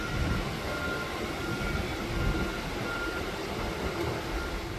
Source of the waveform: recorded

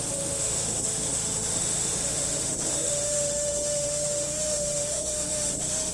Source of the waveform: remade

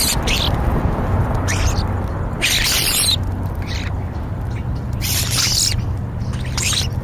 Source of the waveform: recorded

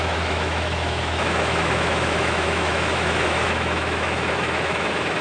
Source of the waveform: remade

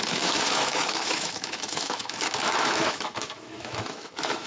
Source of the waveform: remade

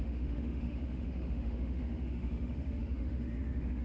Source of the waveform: remade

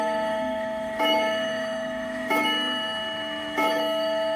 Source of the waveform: remade